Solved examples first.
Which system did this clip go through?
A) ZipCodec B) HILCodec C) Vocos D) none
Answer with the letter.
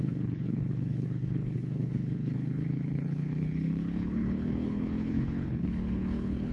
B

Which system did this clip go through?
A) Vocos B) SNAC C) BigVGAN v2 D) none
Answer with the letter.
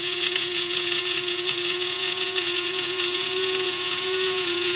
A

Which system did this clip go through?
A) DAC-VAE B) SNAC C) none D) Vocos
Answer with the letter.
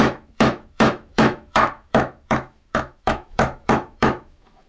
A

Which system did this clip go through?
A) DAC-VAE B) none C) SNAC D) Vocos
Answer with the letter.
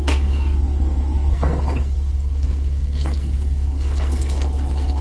C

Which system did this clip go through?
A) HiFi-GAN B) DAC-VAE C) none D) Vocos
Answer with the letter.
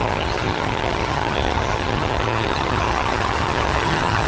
A